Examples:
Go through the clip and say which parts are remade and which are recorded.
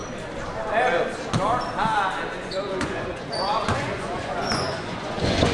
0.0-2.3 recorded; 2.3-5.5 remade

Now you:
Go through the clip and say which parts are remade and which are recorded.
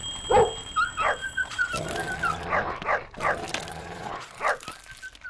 0.0-1.2 recorded; 1.2-1.7 remade; 1.7-3.8 recorded; 3.8-4.3 remade; 4.3-5.3 recorded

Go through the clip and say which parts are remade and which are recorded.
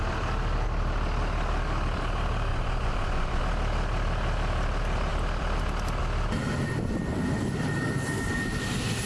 0.0-2.5 recorded; 2.5-3.4 remade; 3.4-9.1 recorded